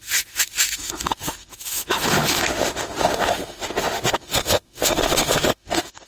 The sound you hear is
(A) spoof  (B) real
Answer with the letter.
A